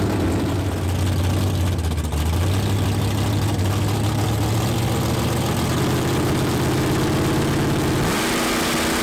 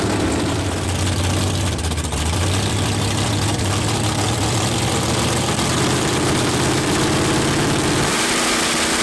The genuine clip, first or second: first